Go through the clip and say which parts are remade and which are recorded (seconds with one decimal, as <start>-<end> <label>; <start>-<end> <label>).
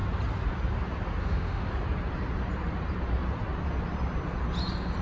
0.0-1.2 recorded; 1.2-1.7 remade; 1.7-5.0 recorded